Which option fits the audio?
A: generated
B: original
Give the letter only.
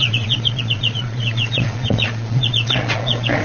A